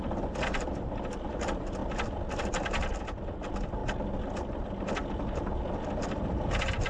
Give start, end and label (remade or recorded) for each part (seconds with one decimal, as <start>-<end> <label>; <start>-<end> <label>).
0.0-1.8 remade; 1.8-2.3 recorded; 2.3-3.8 remade; 3.8-4.4 recorded; 4.4-6.9 remade